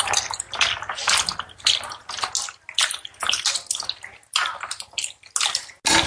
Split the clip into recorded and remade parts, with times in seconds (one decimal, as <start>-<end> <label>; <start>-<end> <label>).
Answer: 0.0-6.1 recorded